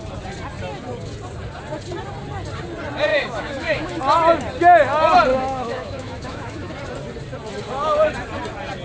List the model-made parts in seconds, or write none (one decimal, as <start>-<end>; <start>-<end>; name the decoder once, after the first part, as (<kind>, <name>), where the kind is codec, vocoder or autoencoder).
3.1-4.0 (autoencoder, DAC-VAE); 5.3-6.7